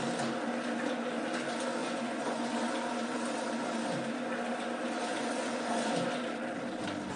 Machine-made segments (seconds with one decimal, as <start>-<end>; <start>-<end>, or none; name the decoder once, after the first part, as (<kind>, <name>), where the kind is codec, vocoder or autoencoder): 1.8-2.5 (vocoder, Vocos); 5.1-5.9

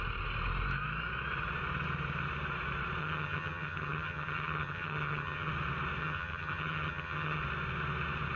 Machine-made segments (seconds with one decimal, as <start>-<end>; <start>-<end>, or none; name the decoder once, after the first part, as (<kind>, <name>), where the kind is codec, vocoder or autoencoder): 3.0-5.5 (vocoder, HiFi-GAN); 6.0-7.4

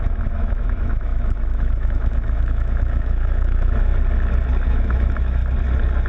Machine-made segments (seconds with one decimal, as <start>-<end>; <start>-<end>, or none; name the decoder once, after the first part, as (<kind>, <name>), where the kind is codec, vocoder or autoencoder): 0.0-3.9 (autoencoder, DAC-VAE); 4.7-5.4

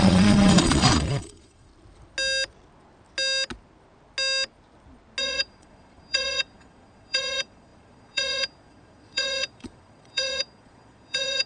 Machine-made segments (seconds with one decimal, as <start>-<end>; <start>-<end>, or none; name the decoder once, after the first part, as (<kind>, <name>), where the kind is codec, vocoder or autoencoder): 0.0-1.7 (vocoder, Vocos); 5.2-11.5

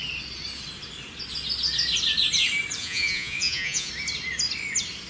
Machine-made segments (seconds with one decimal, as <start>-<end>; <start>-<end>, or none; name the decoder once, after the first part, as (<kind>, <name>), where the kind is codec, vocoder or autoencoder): 2.8-3.9 (vocoder, Vocos)

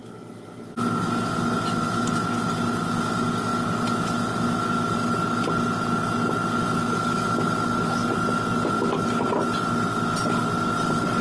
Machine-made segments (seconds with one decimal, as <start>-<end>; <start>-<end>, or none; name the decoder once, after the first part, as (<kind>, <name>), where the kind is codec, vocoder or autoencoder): 0.0-0.7 (vocoder, BigVGAN v2)